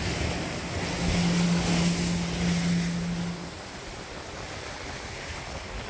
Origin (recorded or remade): recorded